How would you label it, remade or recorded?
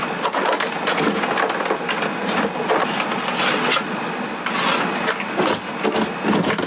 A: recorded